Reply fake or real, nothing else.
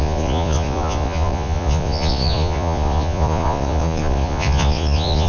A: fake